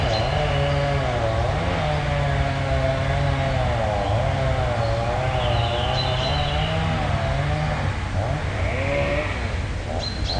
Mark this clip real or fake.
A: real